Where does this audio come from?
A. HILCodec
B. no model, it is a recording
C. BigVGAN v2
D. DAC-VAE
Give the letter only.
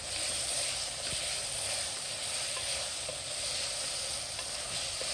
B